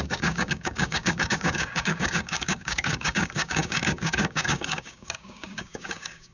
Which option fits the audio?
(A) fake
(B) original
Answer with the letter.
A